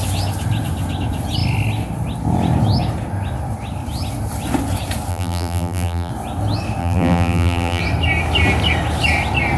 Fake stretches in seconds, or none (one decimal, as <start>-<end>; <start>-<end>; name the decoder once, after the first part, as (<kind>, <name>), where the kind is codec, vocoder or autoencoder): 5.1-6.1 (vocoder, BigVGAN v2); 6.8-7.8